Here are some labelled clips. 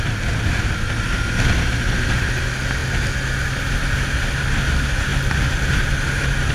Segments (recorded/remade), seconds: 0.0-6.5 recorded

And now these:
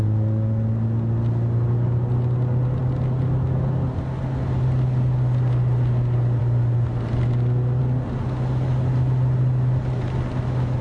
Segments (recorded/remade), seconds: 0.0-10.8 recorded

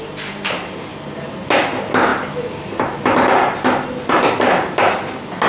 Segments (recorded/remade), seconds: 0.0-5.5 recorded